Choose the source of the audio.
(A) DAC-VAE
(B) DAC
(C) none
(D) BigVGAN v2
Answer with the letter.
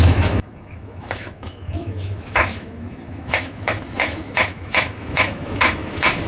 A